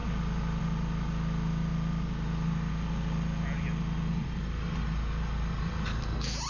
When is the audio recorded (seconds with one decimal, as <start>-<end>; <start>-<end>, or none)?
0.0-6.5